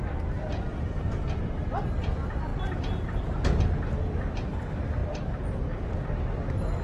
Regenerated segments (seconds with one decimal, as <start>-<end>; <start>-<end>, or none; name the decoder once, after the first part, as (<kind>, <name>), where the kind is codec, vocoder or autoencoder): 0.7-1.8 (vocoder, BigVGAN v2); 5.0-5.9

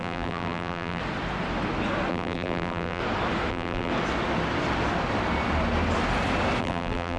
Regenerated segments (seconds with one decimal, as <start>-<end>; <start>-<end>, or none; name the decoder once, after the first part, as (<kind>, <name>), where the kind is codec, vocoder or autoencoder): 0.0-1.0 (vocoder, BigVGAN v2); 2.1-3.0; 3.5-3.9; 6.6-7.2

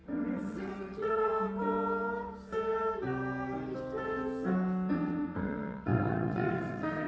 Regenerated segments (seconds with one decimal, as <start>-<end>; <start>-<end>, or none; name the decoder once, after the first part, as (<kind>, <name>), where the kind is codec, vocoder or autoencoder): 0.0-1.3 (vocoder, WaveNeXt); 4.9-7.1

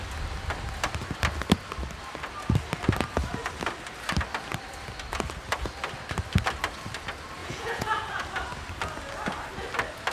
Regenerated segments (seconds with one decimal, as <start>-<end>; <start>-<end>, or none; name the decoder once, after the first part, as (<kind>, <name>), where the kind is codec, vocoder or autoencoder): 7.4-8.2 (vocoder, Vocos)

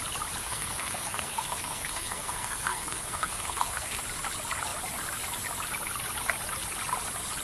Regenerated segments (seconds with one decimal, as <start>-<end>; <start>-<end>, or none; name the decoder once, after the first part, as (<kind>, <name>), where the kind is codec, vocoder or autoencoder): 0.4-4.0 (codec, SNAC)

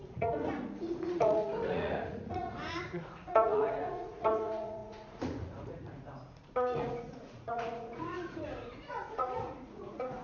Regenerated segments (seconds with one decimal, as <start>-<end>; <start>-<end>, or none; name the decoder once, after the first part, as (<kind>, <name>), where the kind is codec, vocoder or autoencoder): 0.0-10.2 (vocoder, Vocos)

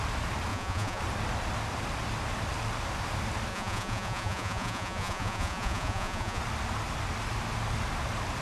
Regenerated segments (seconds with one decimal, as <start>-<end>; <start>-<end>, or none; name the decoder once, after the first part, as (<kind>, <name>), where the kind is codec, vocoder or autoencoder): 0.5-1.0 (vocoder, Vocos); 3.5-6.4